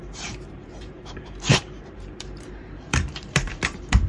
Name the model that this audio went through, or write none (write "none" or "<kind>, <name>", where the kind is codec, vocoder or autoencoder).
vocoder, BigVGAN v2